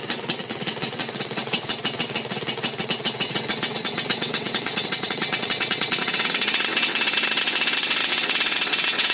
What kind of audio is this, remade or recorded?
remade